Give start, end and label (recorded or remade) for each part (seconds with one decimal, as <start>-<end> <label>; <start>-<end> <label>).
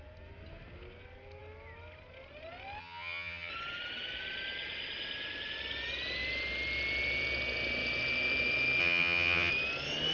0.0-2.8 recorded; 2.8-3.5 remade; 3.5-8.8 recorded; 8.8-9.5 remade; 9.5-10.1 recorded